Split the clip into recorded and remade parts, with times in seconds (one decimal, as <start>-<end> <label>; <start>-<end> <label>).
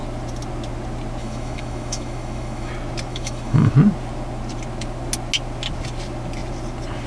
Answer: 0.0-1.2 recorded; 1.2-2.7 remade; 2.7-3.1 recorded; 3.1-3.7 remade; 3.7-7.1 recorded